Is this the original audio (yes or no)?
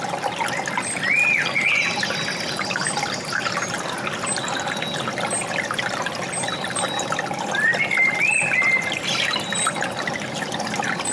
yes